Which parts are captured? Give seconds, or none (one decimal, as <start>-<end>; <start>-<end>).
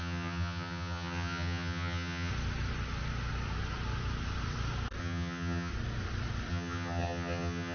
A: 2.3-5.0; 5.7-6.5